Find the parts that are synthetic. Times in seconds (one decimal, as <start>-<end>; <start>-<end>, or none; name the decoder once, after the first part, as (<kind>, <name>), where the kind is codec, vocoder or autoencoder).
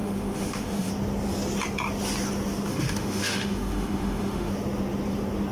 0.0-0.9 (autoencoder, DAC-VAE); 2.7-4.5